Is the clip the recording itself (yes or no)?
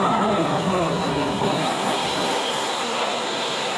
no